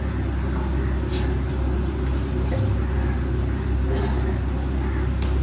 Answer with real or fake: real